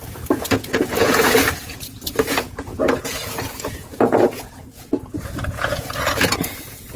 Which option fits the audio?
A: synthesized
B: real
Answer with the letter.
A